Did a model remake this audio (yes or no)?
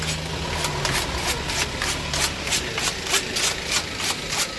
no